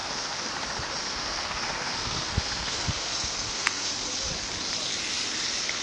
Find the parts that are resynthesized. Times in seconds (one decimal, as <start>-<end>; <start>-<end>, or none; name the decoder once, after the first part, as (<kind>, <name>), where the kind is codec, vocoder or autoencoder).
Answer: 0.0-0.5 (codec, SNAC); 1.0-3.9